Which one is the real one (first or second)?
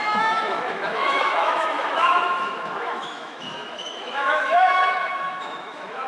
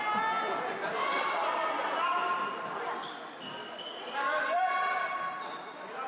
second